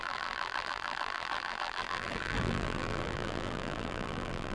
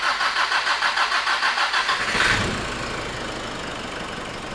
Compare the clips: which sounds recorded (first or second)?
second